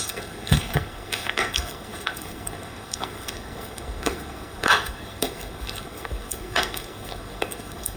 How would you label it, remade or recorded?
remade